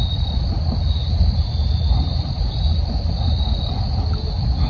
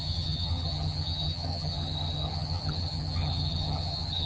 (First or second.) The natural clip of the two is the first